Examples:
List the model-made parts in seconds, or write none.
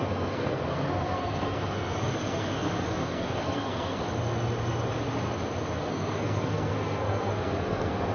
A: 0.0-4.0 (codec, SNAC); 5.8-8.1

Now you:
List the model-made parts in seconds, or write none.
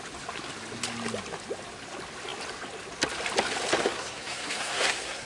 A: 3.8-5.3 (codec, SNAC)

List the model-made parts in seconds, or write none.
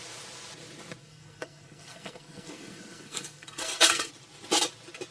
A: 1.0-4.1 (codec, SNAC)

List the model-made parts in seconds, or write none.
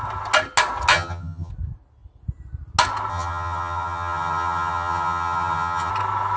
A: 0.9-1.5 (vocoder, HiFi-GAN); 3.1-5.9